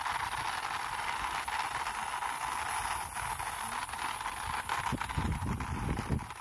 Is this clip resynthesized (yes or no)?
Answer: no